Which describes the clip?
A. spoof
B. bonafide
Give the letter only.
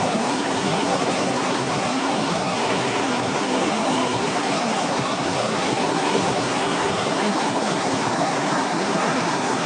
A